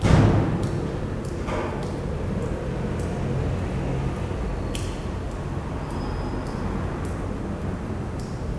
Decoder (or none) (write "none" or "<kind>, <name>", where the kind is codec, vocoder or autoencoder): none